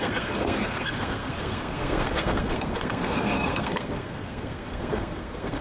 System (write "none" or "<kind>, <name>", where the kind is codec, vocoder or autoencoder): codec, SNAC